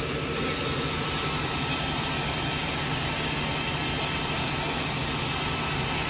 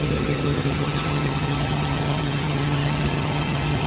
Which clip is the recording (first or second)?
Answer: first